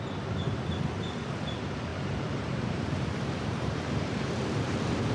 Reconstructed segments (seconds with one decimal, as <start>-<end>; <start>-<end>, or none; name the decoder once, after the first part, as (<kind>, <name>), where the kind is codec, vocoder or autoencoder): 1.9-5.1 (vocoder, BigVGAN v2)